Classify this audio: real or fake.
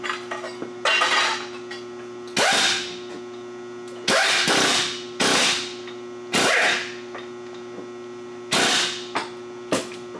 real